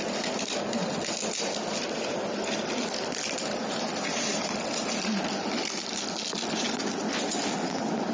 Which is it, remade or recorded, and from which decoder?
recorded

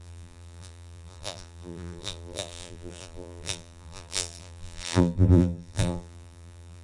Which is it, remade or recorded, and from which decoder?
remade, vocoder, BigVGAN v2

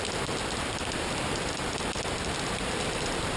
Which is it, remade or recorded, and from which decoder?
recorded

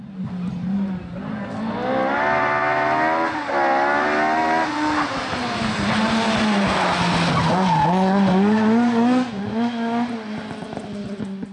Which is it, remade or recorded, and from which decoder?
recorded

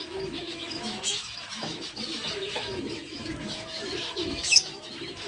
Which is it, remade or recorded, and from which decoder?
remade, autoencoder, DAC-VAE